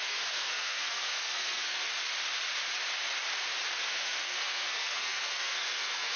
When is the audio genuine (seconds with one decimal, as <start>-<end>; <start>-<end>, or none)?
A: 1.9-3.8

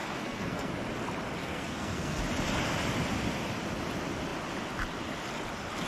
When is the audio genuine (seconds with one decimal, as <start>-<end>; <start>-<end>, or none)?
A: 0.7-1.4; 2.2-5.9